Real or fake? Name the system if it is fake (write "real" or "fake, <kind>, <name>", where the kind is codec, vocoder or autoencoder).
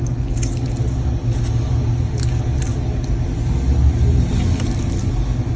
real